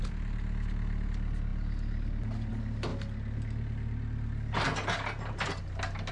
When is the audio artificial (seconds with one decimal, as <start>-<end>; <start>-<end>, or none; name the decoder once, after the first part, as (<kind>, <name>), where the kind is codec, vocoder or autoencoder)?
none